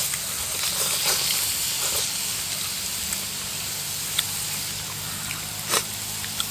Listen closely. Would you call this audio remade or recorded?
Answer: recorded